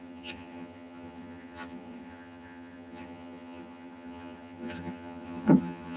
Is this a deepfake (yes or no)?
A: yes